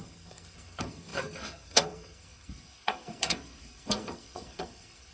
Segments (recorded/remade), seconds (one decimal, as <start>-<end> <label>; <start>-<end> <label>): 0.0-5.1 remade